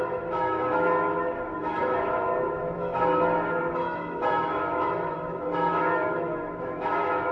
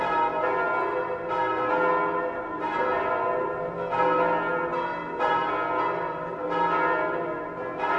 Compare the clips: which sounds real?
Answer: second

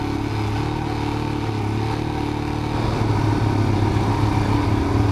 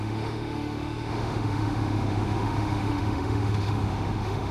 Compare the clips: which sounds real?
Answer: first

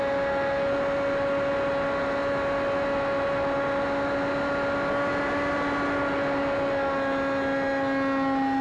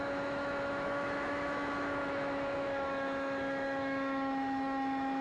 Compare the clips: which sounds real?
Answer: first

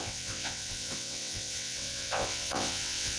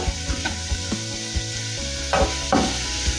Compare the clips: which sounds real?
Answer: second